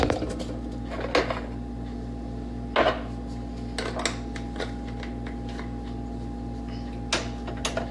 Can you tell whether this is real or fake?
real